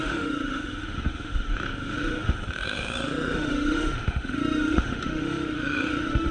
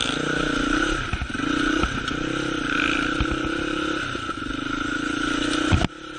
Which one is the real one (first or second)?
second